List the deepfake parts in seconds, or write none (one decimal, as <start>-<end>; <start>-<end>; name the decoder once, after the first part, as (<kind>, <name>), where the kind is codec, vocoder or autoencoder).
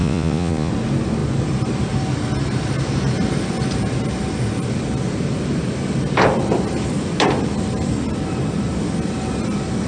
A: 0.0-0.7 (vocoder, Vocos)